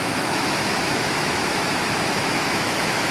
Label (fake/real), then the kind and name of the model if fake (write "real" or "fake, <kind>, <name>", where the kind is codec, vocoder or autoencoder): fake, autoencoder, DAC-VAE